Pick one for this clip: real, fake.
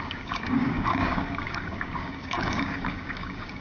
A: fake